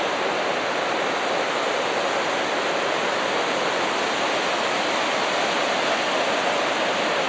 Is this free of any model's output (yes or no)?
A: yes